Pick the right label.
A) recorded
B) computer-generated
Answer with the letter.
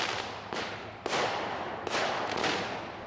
A